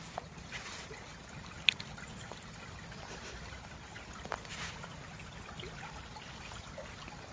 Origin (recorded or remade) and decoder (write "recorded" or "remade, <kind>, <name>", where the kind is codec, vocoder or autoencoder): recorded